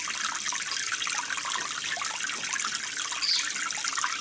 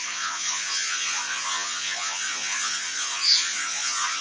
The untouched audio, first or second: first